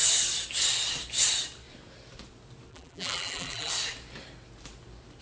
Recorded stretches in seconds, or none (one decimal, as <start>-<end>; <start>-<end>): 0.0-2.7; 3.7-5.2

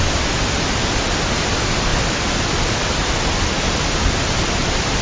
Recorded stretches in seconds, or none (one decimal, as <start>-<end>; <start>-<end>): 0.0-5.0

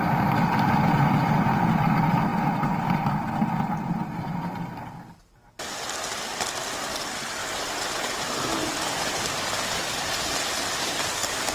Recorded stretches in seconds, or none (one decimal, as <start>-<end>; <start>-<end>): 0.0-7.4; 7.9-8.5; 9.4-11.5

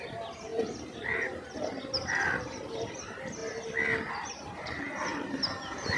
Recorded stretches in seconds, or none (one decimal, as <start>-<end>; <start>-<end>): 3.4-4.1

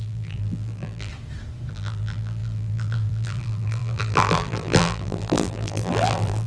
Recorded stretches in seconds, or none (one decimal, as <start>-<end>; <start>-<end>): 1.1-1.7